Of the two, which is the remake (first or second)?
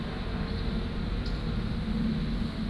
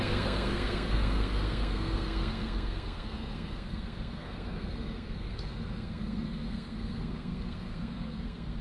second